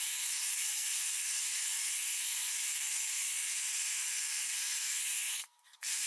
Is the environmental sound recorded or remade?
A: remade